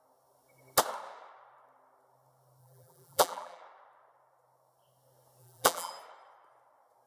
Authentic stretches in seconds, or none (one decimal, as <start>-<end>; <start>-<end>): 0.0-2.6; 3.6-5.4; 5.9-7.1